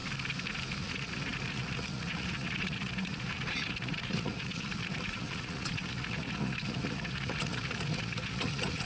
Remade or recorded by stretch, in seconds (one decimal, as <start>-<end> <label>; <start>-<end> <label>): 0.0-0.8 recorded; 0.8-8.9 remade